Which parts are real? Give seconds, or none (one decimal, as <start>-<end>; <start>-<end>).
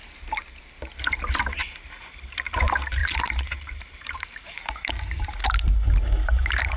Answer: 0.0-3.0; 4.9-6.8